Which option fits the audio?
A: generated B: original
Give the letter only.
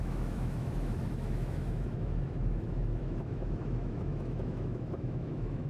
A